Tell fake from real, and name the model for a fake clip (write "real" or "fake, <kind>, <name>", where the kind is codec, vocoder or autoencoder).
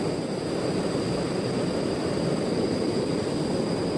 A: real